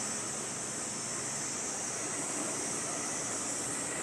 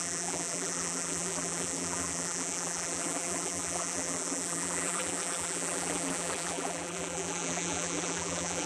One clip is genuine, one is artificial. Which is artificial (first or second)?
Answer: second